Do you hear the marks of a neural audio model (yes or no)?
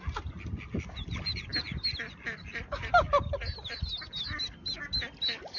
no